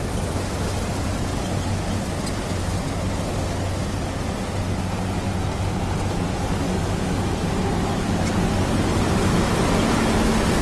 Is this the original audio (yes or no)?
yes